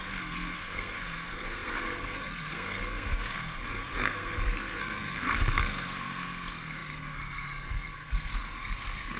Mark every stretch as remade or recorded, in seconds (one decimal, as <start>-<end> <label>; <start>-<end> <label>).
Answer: 0.0-9.2 remade